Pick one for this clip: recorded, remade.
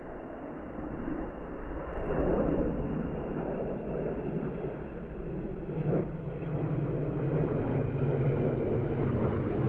recorded